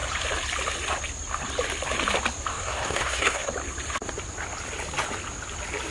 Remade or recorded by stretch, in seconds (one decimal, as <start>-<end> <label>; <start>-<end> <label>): 0.0-2.5 recorded; 2.5-3.5 remade; 3.5-5.9 recorded